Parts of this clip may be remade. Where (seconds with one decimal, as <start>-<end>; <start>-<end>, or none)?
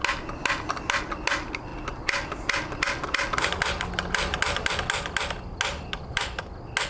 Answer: 5.7-6.3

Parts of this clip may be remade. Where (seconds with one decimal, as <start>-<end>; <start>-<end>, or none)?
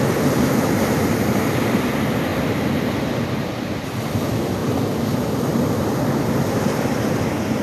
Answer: 0.0-4.6; 5.4-7.6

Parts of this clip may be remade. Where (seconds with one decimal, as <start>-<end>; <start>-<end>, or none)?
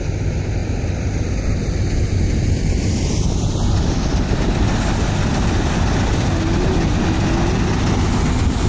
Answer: none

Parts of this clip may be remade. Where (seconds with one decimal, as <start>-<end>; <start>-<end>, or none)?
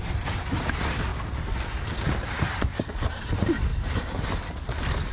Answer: 0.0-3.7; 4.4-5.1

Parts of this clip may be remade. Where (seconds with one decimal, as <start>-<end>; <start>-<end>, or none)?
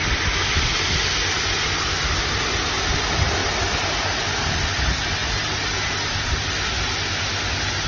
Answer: 3.4-4.8